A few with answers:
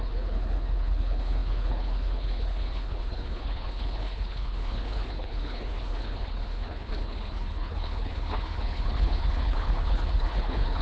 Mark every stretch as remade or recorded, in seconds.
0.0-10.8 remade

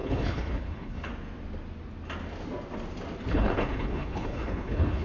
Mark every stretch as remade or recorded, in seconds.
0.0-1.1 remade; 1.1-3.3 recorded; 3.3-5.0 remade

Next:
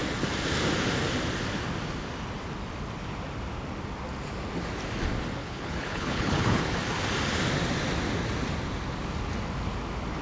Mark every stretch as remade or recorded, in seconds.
0.0-5.4 recorded; 5.4-6.6 remade; 6.6-10.2 recorded